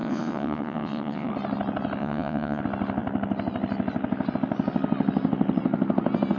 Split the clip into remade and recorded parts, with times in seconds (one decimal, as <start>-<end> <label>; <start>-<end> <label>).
0.0-1.3 remade; 1.3-2.0 recorded; 2.0-2.6 remade; 2.6-6.4 recorded